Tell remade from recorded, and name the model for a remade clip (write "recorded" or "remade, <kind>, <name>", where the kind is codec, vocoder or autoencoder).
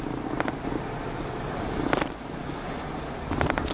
recorded